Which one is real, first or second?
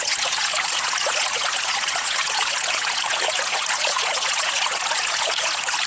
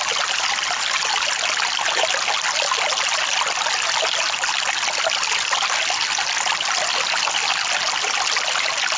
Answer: second